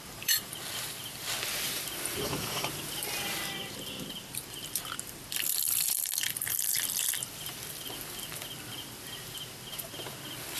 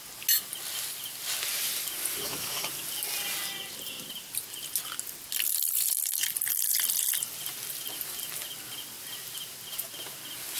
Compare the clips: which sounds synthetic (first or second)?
first